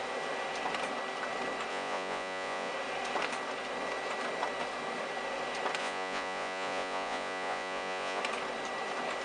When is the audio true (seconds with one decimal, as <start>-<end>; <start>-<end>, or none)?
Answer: 0.0-1.7; 2.7-5.8; 8.2-9.2